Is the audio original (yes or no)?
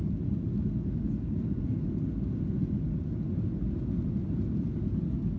yes